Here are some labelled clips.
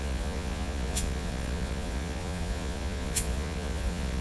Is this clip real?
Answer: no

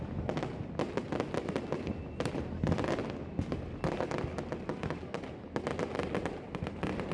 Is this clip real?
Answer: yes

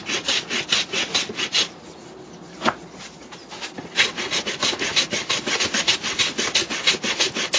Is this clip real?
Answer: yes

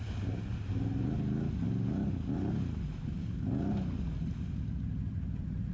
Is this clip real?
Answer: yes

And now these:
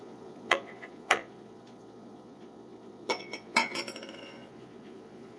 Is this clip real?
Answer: no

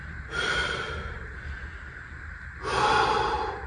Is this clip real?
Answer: yes